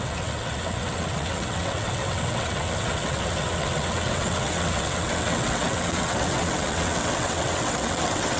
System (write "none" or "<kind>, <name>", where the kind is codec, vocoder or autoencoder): vocoder, WaveNeXt